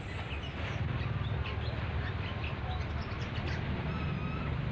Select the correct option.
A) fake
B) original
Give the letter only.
B